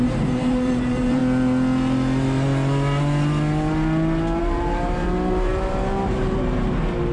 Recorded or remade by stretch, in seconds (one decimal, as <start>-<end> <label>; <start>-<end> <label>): 0.0-1.2 remade; 1.2-4.4 recorded; 4.4-7.1 remade